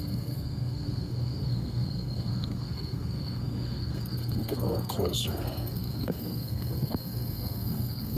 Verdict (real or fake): fake